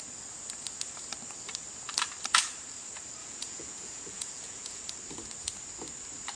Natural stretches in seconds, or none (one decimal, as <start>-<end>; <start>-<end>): 0.0-3.2; 4.9-6.4